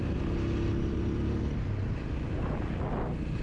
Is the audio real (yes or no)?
yes